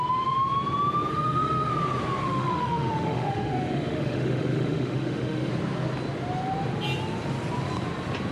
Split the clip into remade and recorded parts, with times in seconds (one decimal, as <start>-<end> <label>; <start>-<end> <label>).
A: 0.0-1.1 recorded; 1.1-1.7 remade; 1.7-2.2 recorded; 2.2-5.5 remade; 5.5-8.3 recorded